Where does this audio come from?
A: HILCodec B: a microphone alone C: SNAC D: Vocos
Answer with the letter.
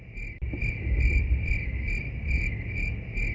B